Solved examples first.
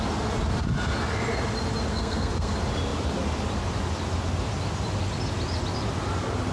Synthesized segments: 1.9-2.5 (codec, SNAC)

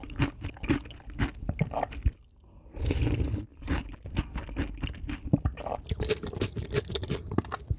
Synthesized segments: 3.5-4.1 (vocoder, BigVGAN v2)

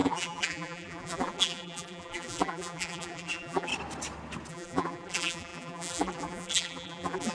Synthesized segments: 0.0-3.7 (vocoder, BigVGAN v2); 4.5-7.3